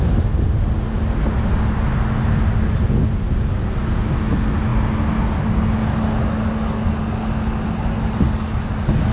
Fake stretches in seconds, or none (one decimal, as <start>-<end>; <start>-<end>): none